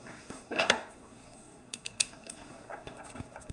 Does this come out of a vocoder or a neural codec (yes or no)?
yes